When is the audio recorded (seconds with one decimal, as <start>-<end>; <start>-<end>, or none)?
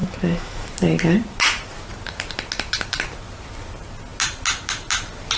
0.7-5.4